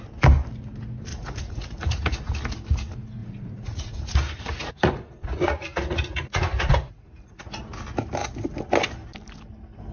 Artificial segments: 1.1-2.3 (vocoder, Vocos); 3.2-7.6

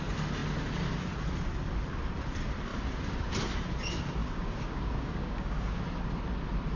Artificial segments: 4.2-5.8 (codec, DAC)

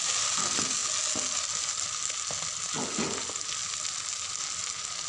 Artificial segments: none

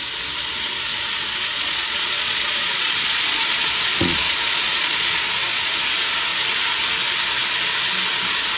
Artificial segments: 1.5-5.8 (vocoder, Vocos)

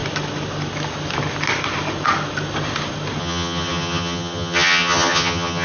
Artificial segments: 3.2-5.6 (vocoder, HiFi-GAN)

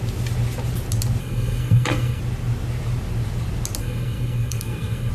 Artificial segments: 1.2-2.2 (codec, SNAC); 3.8-5.1

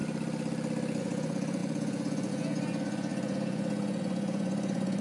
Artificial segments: 1.0-5.0 (vocoder, Vocos)

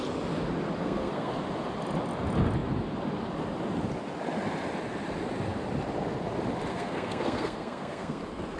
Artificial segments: 0.8-1.3 (codec, SNAC); 6.7-8.2